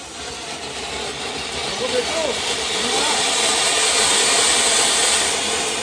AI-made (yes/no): yes